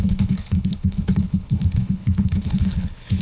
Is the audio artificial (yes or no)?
yes